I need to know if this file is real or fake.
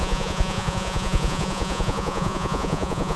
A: fake